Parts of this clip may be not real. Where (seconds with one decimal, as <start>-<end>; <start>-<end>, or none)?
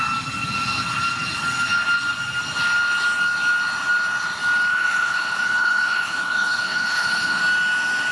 4.7-7.4